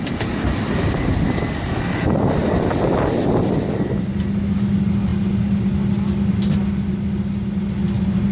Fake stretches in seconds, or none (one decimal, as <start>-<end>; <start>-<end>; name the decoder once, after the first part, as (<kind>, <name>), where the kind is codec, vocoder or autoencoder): none